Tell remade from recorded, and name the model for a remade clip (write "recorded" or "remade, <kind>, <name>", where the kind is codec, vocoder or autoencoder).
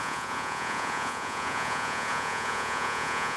remade, vocoder, Vocos